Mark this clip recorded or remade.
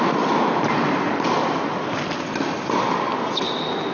recorded